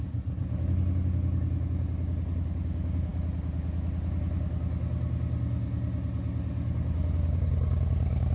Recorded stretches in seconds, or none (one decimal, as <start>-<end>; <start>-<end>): 0.0-8.3